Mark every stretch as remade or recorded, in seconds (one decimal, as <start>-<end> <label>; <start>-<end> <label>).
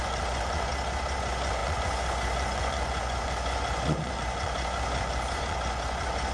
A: 0.0-0.7 remade; 0.7-1.2 recorded; 1.2-6.3 remade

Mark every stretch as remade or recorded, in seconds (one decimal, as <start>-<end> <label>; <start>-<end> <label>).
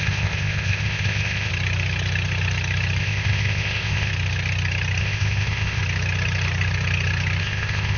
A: 0.0-1.5 remade; 1.5-3.0 recorded; 3.0-4.1 remade; 4.1-5.0 recorded; 5.0-5.8 remade; 5.8-7.4 recorded; 7.4-8.0 remade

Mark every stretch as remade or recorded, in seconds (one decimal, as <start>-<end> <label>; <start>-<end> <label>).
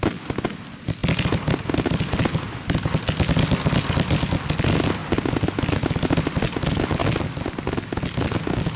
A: 0.0-8.8 recorded